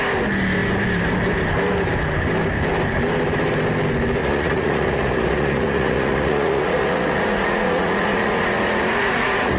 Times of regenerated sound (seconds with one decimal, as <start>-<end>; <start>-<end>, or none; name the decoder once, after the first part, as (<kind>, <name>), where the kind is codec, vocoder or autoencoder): 4.2-9.6 (vocoder, Vocos)